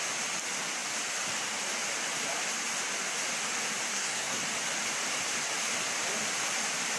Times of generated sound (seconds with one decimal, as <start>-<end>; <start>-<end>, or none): 3.9-4.4